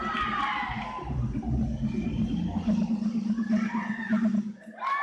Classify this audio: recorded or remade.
recorded